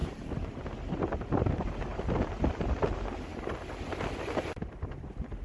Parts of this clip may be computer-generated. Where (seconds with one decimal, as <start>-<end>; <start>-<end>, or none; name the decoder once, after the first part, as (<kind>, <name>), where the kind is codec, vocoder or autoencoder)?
0.0-0.6 (vocoder, BigVGAN v2); 1.9-2.6; 3.3-5.4